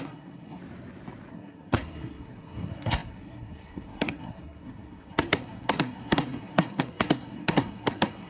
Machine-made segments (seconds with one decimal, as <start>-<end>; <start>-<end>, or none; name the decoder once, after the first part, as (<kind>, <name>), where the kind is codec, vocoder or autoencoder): 0.0-0.6 (codec, SNAC); 1.3-8.3